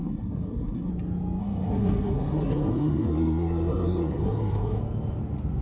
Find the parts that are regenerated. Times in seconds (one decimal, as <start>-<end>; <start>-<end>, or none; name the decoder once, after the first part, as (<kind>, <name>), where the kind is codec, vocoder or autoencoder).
0.0-0.9 (codec, SNAC); 1.4-4.8